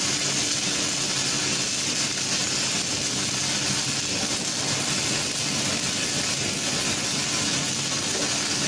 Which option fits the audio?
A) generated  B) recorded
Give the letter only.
B